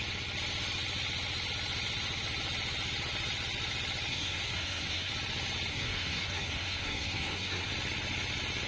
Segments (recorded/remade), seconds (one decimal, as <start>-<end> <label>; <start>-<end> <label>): 0.0-4.1 recorded; 4.1-5.1 remade; 5.1-5.7 recorded; 5.7-7.7 remade; 7.7-8.7 recorded